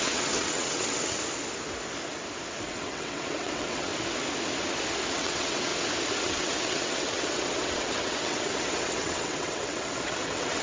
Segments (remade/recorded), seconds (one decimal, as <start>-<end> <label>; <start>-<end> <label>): 0.0-1.2 remade; 1.2-2.6 recorded; 2.6-3.9 remade; 3.9-5.1 recorded; 5.1-5.7 remade; 5.7-6.2 recorded; 6.2-10.6 remade